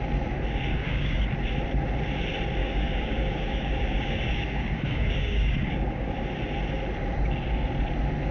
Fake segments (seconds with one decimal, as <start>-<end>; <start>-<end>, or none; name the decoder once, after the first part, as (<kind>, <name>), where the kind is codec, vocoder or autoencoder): 0.7-1.2 (codec, DAC); 2.6-6.1